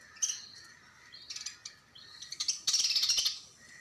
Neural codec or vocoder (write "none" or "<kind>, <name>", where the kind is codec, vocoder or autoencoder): none